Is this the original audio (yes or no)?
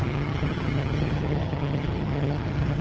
no